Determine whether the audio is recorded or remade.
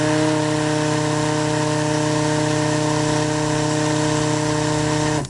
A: recorded